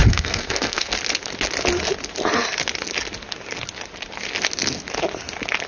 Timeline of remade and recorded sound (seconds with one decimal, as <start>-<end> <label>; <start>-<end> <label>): 0.0-0.9 remade; 0.9-5.7 recorded